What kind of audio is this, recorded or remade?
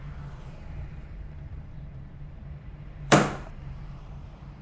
remade